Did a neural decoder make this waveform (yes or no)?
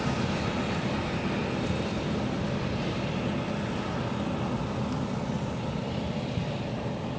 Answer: no